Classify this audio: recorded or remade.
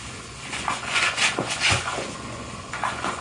remade